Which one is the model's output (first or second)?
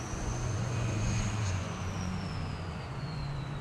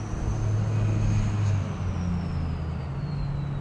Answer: first